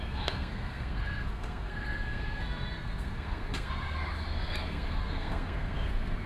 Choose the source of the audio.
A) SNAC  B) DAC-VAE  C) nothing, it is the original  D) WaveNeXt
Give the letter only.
A